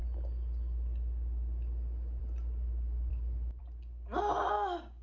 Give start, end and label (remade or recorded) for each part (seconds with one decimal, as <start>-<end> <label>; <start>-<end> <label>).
0.0-5.0 recorded